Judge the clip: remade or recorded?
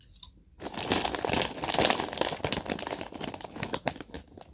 recorded